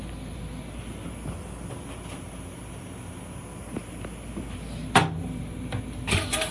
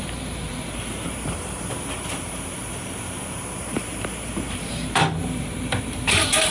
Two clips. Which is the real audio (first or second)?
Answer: first